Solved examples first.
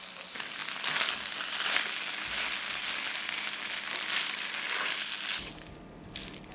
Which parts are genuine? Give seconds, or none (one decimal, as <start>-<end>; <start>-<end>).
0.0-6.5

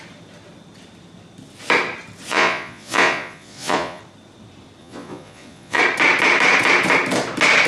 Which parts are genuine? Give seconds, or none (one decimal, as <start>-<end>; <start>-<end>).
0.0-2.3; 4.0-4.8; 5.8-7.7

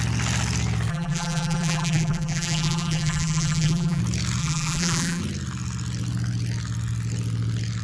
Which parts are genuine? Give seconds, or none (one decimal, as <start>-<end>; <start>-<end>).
0.0-0.9; 4.0-4.4; 5.2-7.8